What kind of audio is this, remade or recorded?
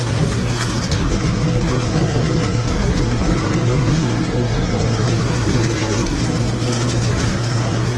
remade